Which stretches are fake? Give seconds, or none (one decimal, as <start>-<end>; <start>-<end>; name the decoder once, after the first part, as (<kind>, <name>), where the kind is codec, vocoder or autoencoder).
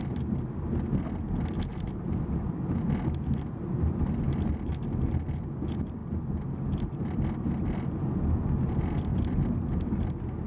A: 1.7-2.7 (vocoder, BigVGAN v2)